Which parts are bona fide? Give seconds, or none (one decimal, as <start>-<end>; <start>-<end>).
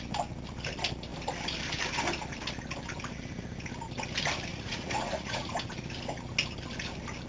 0.0-4.5; 5.5-7.3